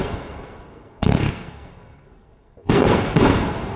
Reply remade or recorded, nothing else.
remade